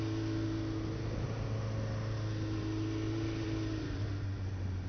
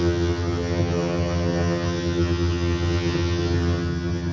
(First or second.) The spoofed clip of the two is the second